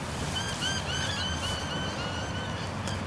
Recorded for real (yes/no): yes